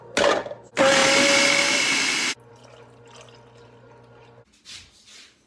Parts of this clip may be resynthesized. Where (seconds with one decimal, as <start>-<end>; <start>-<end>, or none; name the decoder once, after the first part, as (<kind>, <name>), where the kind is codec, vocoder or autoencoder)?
none